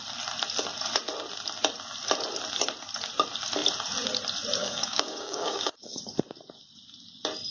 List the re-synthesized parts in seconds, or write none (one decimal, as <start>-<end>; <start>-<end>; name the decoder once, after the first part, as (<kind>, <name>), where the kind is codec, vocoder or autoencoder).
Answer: 4.6-6.0 (codec, DAC)